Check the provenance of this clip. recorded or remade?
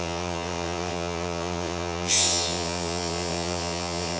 remade